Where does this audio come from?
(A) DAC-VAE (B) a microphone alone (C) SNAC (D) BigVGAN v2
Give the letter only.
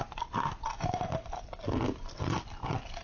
B